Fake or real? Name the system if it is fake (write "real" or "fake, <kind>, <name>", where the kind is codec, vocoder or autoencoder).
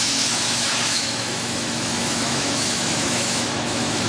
fake, autoencoder, DAC-VAE